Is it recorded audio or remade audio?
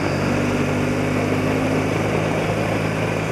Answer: recorded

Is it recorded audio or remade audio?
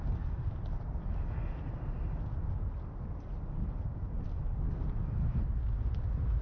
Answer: recorded